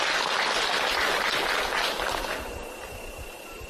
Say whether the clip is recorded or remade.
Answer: recorded